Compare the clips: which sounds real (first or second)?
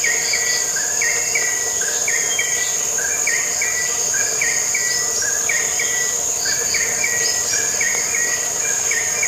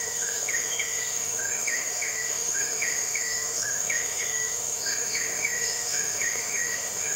first